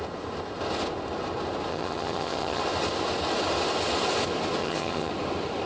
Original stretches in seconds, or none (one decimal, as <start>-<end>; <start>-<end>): 0.0-1.7; 2.6-4.6; 5.1-5.7